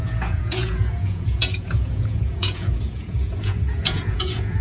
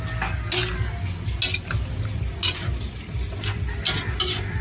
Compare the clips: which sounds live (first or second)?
second